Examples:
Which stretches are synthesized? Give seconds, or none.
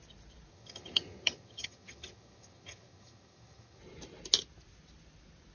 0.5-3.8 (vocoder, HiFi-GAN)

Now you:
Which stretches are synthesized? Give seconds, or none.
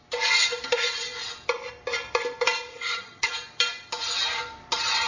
2.7-3.3 (vocoder, HiFi-GAN)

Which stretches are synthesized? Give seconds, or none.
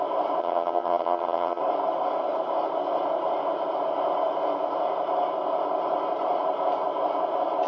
0.4-1.6 (vocoder, HiFi-GAN)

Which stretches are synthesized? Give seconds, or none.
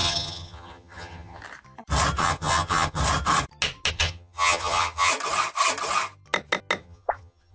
0.0-1.4 (vocoder, HiFi-GAN); 2.2-3.0; 3.9-5.1; 6.8-7.5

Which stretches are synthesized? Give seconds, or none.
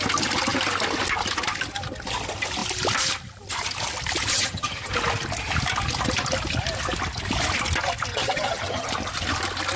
4.3-4.9 (vocoder, HiFi-GAN); 8.1-8.9